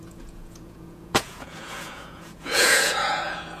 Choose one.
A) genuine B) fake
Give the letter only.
B